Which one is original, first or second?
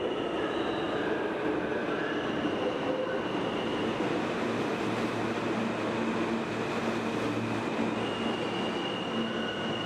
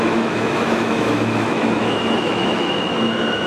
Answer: first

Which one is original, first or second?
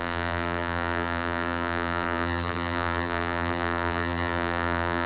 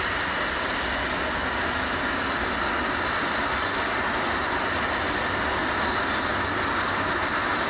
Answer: second